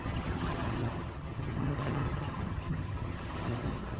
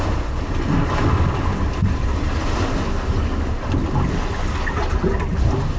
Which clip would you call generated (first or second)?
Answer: first